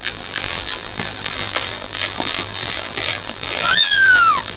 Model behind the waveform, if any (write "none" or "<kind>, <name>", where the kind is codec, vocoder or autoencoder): vocoder, BigVGAN v2